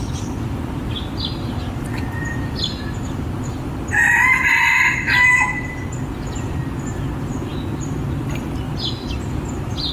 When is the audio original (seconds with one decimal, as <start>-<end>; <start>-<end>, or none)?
0.0-9.9